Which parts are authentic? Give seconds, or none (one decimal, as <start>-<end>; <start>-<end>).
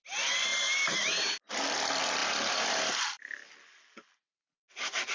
0.0-2.2; 3.2-5.1